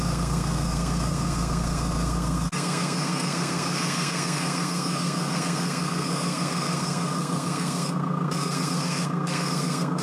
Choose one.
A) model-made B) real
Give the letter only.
A